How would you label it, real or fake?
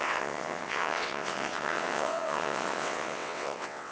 fake